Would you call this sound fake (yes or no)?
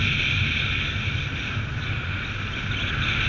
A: no